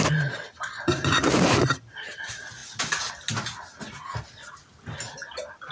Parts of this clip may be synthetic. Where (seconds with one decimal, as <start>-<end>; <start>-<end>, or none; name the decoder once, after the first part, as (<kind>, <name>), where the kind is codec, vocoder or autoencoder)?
none